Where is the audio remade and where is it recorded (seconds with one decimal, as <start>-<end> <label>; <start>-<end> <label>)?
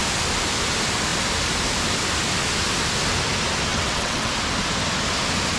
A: 0.0-3.7 recorded; 3.7-4.3 remade; 4.3-5.6 recorded